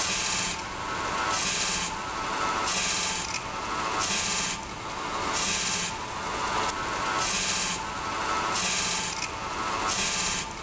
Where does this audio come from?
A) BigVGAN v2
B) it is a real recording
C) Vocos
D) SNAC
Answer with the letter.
B